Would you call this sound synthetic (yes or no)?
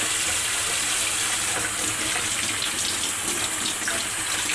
no